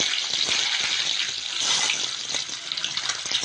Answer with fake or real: real